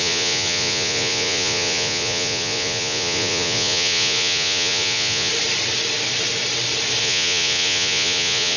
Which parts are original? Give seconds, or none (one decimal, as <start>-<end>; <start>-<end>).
5.3-7.0